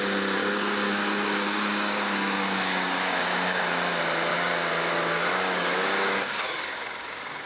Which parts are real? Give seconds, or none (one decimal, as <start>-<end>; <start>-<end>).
0.0-0.4; 3.6-4.3